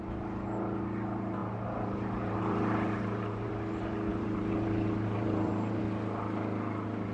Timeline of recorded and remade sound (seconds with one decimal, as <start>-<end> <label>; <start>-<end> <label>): 0.0-1.4 recorded; 1.4-3.5 remade; 3.5-4.1 recorded; 4.1-5.8 remade; 5.8-7.1 recorded

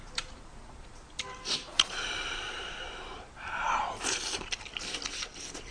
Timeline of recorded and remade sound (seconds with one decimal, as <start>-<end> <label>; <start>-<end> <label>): 0.0-1.2 remade; 1.2-1.6 recorded; 1.6-4.4 remade; 4.4-5.7 recorded

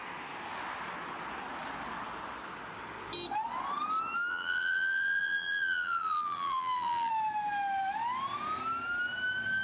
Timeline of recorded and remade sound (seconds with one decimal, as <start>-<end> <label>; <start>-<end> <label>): 0.0-4.3 recorded; 4.3-7.1 remade; 7.1-9.6 recorded